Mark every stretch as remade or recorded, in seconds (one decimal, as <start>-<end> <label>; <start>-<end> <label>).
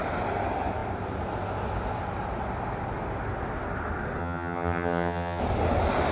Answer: 0.0-4.2 recorded; 4.2-5.4 remade; 5.4-6.1 recorded